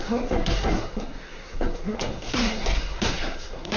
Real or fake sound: fake